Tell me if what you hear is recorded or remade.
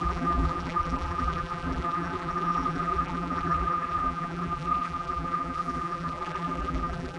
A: remade